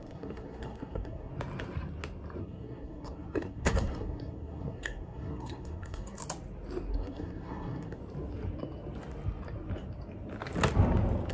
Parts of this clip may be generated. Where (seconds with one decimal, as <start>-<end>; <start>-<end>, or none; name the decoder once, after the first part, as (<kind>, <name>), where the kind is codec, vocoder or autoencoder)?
0.0-1.3 (codec, SNAC); 2.4-6.2; 6.9-8.0